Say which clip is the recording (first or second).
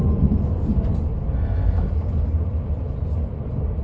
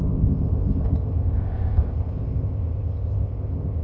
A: first